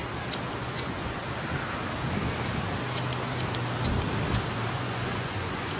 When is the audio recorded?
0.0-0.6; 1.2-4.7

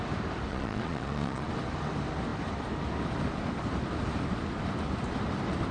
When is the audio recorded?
0.0-0.5; 1.5-5.7

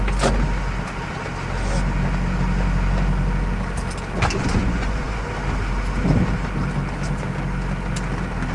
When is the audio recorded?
0.0-4.5; 5.3-8.5

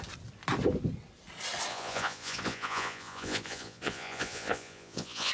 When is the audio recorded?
0.0-1.7

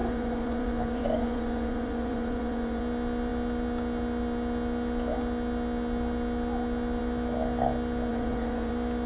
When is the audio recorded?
2.8-8.1; 8.7-9.1

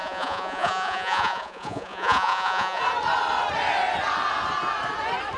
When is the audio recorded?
2.8-5.4